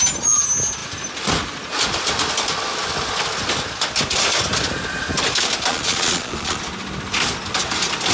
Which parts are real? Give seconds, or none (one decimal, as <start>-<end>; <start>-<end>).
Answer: 0.0-5.7; 6.6-8.1